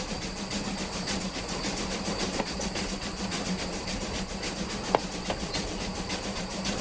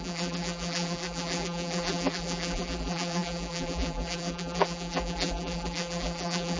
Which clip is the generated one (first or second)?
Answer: second